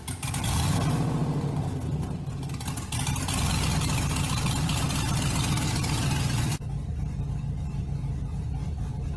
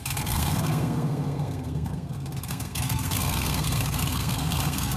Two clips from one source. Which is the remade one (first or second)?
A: second